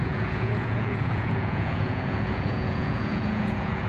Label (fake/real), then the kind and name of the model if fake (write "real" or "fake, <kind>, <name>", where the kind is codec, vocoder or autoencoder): fake, vocoder, Vocos